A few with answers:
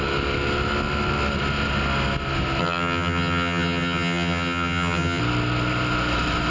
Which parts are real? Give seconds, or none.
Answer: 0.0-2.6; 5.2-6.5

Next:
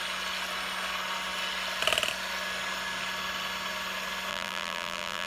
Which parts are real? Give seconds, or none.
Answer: 0.0-4.3

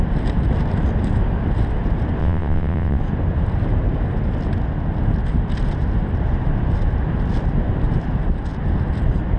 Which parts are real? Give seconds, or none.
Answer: 0.0-2.2; 3.0-9.4

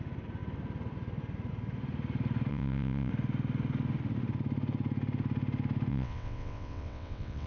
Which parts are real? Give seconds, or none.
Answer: 0.0-2.5; 3.1-5.9

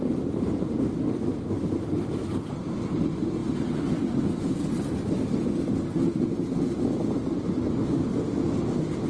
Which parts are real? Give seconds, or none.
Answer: 0.0-9.1

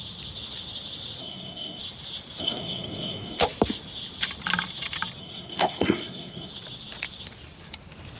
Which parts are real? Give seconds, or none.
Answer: 0.0-1.2; 1.8-2.4; 3.4-5.2; 6.5-8.2

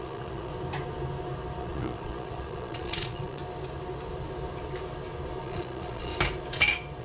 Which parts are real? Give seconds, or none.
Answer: 0.5-1.6; 3.4-5.4; 6.1-7.0